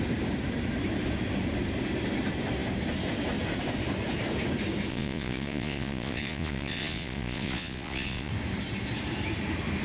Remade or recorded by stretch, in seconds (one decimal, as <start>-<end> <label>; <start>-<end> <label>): 0.0-4.9 recorded; 4.9-8.3 remade; 8.3-9.8 recorded